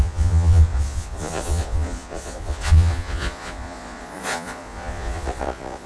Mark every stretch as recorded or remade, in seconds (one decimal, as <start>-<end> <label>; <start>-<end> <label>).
0.0-5.9 remade